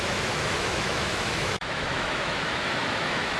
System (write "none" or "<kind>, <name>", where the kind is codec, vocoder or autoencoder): autoencoder, DAC-VAE